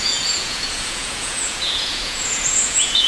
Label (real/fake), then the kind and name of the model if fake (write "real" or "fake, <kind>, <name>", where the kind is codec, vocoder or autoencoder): fake, vocoder, Vocos